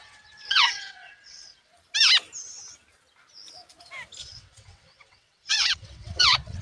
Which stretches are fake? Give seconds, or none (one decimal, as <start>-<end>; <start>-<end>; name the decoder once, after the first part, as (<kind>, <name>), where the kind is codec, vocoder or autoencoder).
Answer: 0.0-1.7 (vocoder, WaveNeXt); 4.2-6.6